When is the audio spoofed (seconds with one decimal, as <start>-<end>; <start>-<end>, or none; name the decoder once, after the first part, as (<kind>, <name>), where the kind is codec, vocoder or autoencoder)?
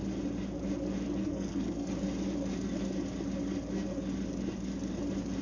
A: 1.2-1.9 (codec, SNAC)